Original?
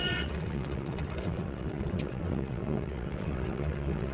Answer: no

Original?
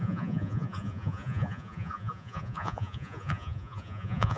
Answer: no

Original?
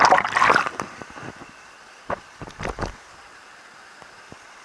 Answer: yes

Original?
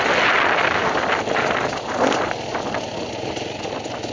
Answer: yes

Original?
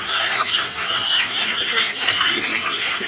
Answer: no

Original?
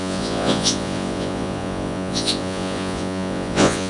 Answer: no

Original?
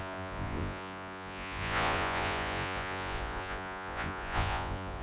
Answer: no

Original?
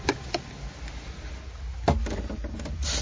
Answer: yes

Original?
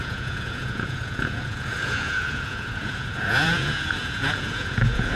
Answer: no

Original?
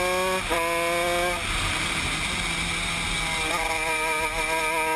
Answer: yes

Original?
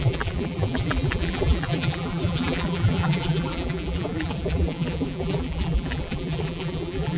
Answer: no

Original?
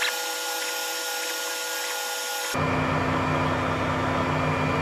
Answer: yes